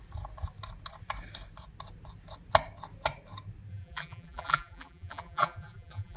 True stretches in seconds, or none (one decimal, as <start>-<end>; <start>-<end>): 0.0-3.7